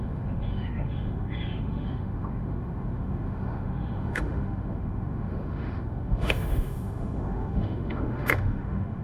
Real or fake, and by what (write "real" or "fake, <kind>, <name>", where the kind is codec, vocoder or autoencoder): fake, autoencoder, DAC-VAE